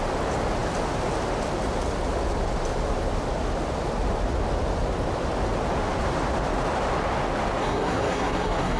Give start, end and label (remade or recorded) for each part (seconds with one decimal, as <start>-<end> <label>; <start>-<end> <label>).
0.0-7.6 recorded; 7.6-8.8 remade